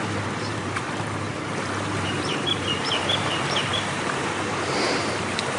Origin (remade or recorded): remade